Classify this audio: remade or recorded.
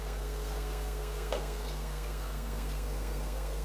remade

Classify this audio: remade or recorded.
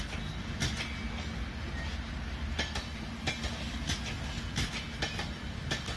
recorded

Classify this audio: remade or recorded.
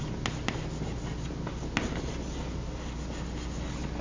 recorded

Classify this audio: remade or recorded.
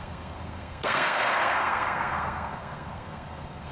remade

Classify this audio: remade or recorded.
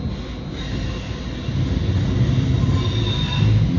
recorded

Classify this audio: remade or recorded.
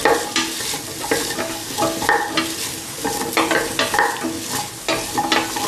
recorded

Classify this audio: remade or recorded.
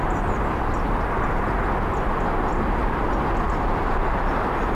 recorded